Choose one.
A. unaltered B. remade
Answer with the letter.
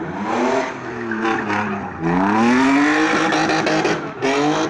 A